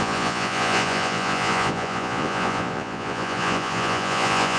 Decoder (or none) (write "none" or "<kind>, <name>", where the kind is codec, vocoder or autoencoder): vocoder, Vocos